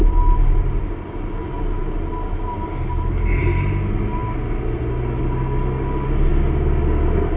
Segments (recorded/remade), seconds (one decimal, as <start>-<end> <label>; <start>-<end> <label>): 0.0-7.4 recorded